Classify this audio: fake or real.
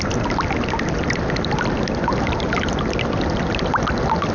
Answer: real